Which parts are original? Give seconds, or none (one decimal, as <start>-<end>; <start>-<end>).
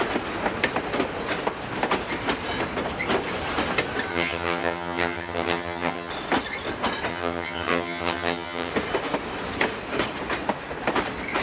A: 0.0-4.1; 6.1-7.1; 8.7-11.4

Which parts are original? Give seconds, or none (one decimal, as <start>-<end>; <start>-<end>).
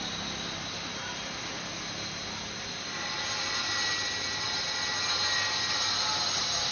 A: 0.0-6.7